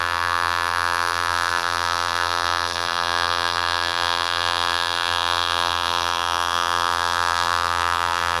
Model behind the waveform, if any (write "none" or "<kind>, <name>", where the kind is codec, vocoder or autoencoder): vocoder, BigVGAN v2